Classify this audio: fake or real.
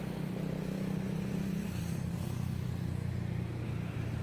real